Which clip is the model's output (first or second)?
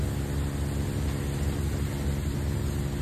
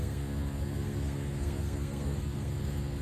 second